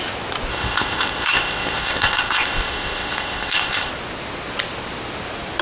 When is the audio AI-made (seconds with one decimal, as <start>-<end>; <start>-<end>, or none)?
0.5-3.9